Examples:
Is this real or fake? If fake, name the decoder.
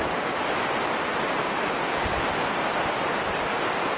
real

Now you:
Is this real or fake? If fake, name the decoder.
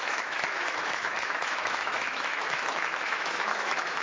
fake, autoencoder, DAC-VAE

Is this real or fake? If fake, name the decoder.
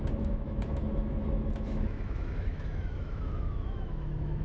fake, autoencoder, DAC-VAE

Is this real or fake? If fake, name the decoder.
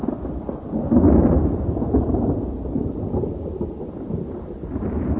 real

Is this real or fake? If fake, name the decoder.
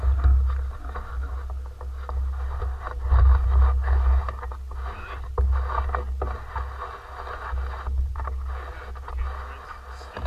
real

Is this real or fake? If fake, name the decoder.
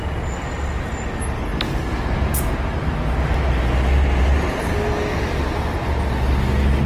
real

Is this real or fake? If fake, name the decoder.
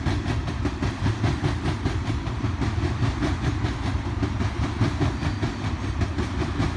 real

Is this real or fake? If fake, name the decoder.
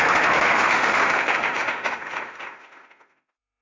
fake, autoencoder, DAC-VAE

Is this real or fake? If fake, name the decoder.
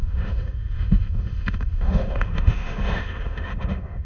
fake, autoencoder, DAC-VAE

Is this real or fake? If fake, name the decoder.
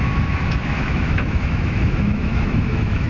fake, autoencoder, DAC-VAE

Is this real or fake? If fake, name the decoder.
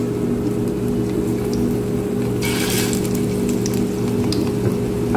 real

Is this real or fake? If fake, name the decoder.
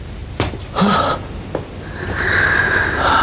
real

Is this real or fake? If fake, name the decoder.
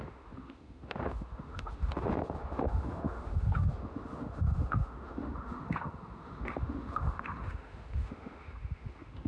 fake, autoencoder, DAC-VAE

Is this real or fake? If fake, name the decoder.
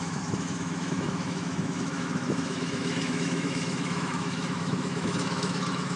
fake, autoencoder, DAC-VAE